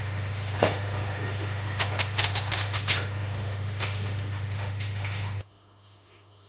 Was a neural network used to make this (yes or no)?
yes